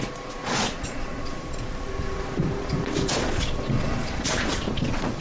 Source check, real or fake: fake